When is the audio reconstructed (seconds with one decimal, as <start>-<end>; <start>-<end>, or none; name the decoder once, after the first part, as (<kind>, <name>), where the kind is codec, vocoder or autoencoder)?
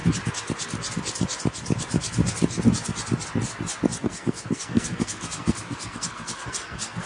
4.0-7.1 (codec, SNAC)